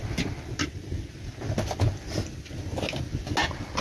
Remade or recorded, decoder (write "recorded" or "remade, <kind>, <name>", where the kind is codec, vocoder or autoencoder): recorded